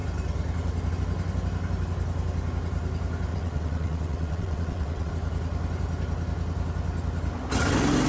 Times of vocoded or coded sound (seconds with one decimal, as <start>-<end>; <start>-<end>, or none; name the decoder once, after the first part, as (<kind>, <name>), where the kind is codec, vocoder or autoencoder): 3.3-5.1 (vocoder, WaveNeXt)